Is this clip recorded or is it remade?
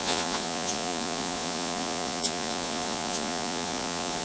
remade